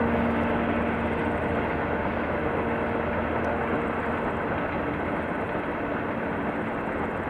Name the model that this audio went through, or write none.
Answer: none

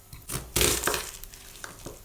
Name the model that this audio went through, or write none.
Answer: none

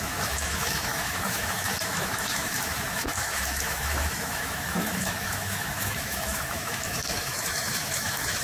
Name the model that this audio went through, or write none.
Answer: autoencoder, DAC-VAE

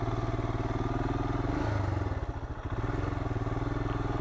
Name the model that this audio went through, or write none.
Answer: none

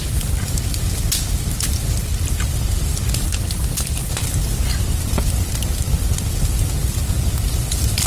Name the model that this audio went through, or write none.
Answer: none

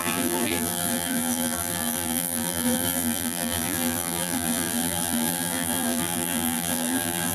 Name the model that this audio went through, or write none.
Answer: vocoder, BigVGAN v2